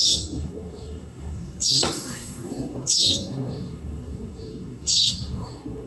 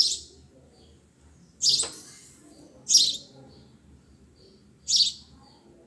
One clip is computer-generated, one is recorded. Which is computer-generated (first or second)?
first